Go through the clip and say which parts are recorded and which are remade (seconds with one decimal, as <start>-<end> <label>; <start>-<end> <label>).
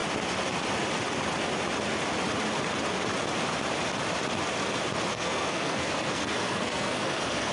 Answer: 0.0-5.1 recorded; 5.1-7.5 remade